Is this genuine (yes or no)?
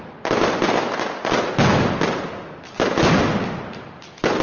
yes